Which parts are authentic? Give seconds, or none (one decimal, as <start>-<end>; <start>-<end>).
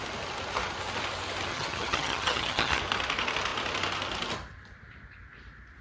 0.0-1.5; 2.8-5.8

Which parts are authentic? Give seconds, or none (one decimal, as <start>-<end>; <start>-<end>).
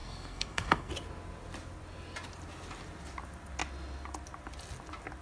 0.9-5.2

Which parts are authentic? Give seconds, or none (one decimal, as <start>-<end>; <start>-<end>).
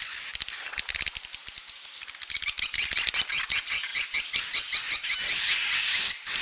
0.0-6.4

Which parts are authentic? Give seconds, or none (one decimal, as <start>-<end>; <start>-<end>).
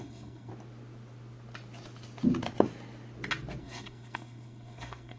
0.5-3.6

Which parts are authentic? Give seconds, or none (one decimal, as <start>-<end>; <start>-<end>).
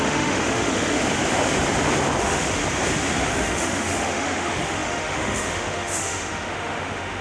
1.0-2.2; 2.6-3.3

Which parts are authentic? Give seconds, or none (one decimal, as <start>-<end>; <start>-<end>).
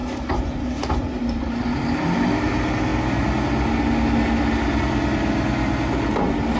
0.0-6.6